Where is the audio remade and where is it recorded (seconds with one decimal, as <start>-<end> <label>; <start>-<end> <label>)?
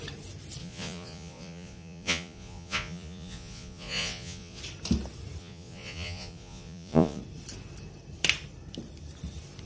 0.0-0.6 recorded; 0.6-4.6 remade; 4.6-5.4 recorded; 5.4-7.2 remade; 7.2-9.7 recorded